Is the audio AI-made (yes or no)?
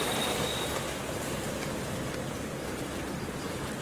no